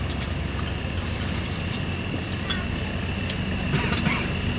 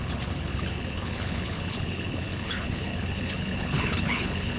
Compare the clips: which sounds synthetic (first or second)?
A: second